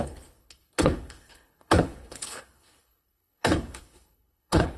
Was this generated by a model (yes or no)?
yes